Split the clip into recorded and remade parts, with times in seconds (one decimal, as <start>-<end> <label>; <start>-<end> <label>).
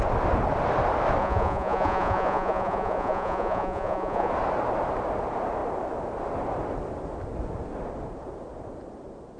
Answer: 0.0-1.2 recorded; 1.2-4.3 remade; 4.3-9.4 recorded